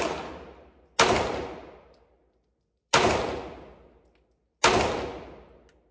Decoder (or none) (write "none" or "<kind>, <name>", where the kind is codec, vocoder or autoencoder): none